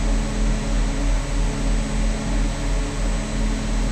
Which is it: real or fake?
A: real